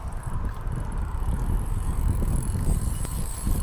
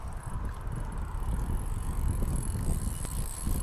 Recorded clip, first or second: second